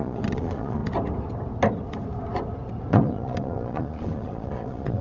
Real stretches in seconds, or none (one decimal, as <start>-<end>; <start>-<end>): 0.8-2.9